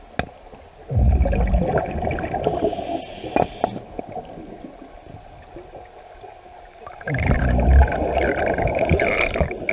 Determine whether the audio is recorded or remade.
recorded